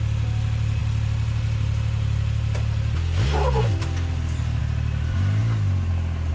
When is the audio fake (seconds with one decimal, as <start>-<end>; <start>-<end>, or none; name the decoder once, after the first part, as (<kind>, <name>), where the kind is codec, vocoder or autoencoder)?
none